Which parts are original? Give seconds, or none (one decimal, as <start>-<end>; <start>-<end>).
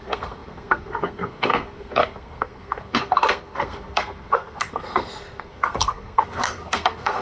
none